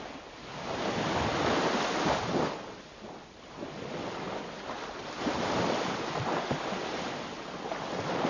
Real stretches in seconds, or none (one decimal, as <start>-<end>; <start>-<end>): 0.0-8.3